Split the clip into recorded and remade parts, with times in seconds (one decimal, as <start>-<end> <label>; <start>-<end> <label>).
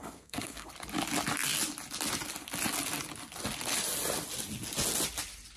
0.0-0.7 remade; 0.7-5.6 recorded